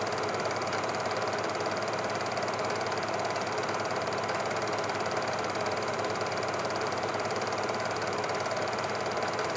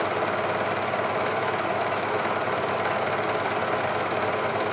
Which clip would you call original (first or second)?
second